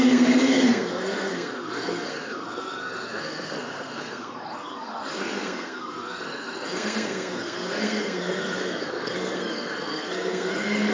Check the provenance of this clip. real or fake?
fake